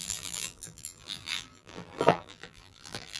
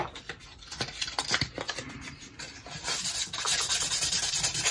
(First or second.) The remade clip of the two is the first